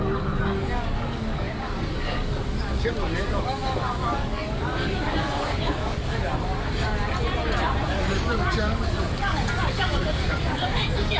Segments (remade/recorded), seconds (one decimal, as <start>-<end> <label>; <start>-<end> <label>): 0.0-6.3 remade; 6.3-7.9 recorded; 7.9-11.2 remade